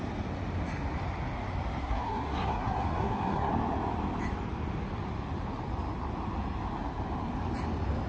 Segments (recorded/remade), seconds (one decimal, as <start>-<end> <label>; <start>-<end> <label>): 0.0-1.8 recorded; 1.8-3.5 remade; 3.5-8.1 recorded